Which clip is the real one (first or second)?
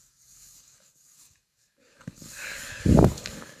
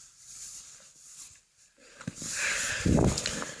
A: second